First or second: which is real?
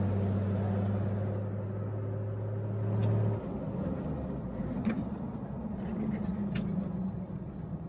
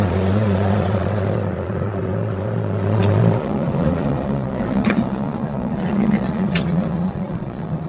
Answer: first